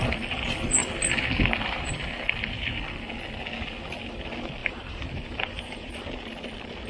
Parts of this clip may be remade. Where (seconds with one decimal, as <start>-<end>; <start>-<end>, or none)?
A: 4.6-6.0